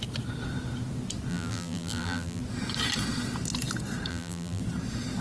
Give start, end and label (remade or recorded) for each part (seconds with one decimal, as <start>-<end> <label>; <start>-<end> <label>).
0.0-1.3 recorded; 1.3-2.4 remade; 2.4-4.1 recorded; 4.1-4.6 remade; 4.6-5.2 recorded

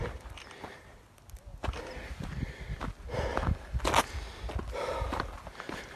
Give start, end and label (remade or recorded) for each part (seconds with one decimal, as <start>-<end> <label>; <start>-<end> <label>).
0.0-6.0 recorded

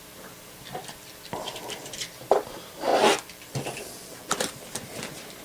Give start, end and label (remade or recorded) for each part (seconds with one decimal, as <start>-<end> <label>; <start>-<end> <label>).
0.0-2.9 remade; 2.9-4.3 recorded; 4.3-5.4 remade